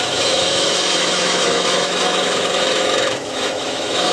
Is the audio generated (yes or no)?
yes